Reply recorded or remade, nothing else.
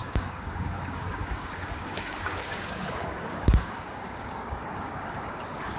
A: remade